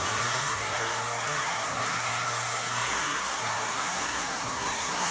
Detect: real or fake fake